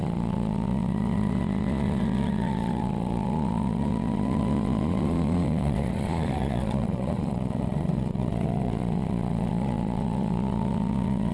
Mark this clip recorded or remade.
remade